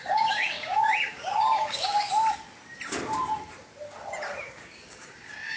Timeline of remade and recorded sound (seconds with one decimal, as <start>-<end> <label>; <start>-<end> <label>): 0.0-2.1 remade; 2.1-4.4 recorded; 4.4-5.6 remade

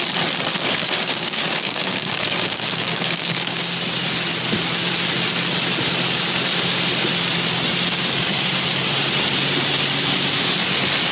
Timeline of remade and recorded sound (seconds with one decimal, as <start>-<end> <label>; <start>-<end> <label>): 0.0-0.5 recorded; 0.5-3.7 remade; 3.7-11.1 recorded